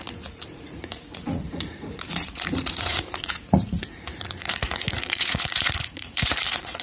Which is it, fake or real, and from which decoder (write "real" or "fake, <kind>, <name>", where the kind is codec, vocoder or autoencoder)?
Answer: fake, vocoder, Vocos